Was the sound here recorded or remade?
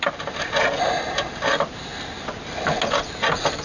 recorded